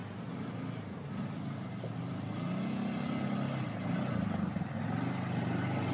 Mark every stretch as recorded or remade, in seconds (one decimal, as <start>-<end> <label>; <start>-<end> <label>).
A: 0.0-5.9 recorded